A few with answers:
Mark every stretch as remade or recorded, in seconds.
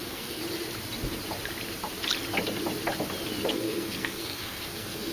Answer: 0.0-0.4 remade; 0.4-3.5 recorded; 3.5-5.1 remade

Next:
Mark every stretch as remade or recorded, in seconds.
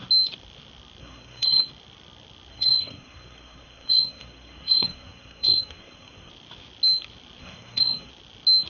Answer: 0.0-1.0 recorded; 1.0-1.6 remade; 1.6-2.5 recorded; 2.5-6.3 remade; 6.3-7.4 recorded; 7.4-8.1 remade; 8.1-8.7 recorded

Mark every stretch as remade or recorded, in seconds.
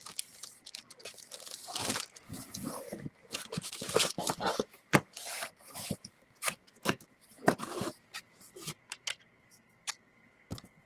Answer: 0.0-10.9 remade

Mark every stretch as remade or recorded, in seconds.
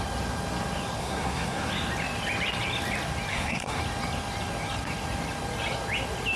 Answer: 0.0-1.0 recorded; 1.0-1.7 remade; 1.7-3.3 recorded; 3.3-3.8 remade; 3.8-6.4 recorded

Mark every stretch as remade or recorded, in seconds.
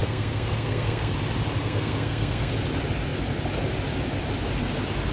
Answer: 0.0-1.1 remade; 1.1-1.6 recorded; 1.6-2.5 remade; 2.5-5.1 recorded